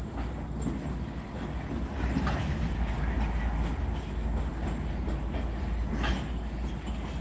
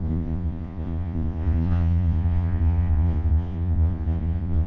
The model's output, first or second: second